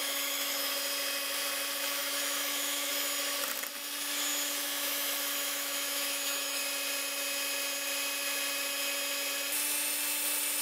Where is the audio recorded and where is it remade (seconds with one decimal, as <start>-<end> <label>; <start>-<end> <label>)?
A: 0.0-0.7 remade; 0.7-2.0 recorded; 2.0-2.9 remade; 2.9-4.3 recorded; 4.3-6.6 remade; 6.6-10.6 recorded